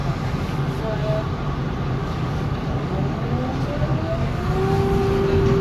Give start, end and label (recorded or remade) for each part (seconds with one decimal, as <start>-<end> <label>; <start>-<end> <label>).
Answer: 0.0-2.0 recorded; 2.0-3.3 remade; 3.3-3.9 recorded; 3.9-4.6 remade; 4.6-5.6 recorded